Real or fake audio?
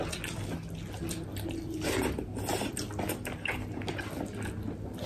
real